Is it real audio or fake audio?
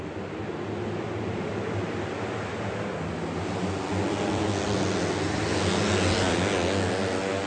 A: real